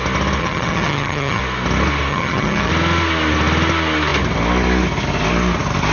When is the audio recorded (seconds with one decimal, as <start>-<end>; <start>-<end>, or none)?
0.0-0.4; 1.4-2.1; 2.7-5.9